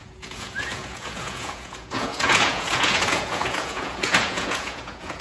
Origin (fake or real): fake